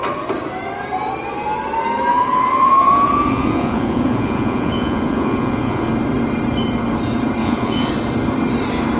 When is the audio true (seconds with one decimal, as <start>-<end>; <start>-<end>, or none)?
0.0-2.1; 5.9-7.4; 7.9-9.0